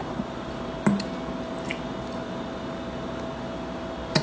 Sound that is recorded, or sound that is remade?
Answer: recorded